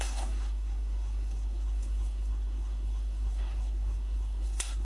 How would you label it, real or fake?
fake